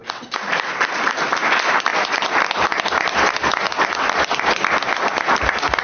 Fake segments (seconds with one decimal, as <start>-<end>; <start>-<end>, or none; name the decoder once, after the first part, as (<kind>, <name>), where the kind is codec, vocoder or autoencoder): 1.9-4.9 (vocoder, BigVGAN v2)